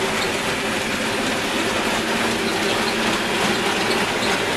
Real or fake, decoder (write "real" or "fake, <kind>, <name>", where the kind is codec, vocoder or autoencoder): real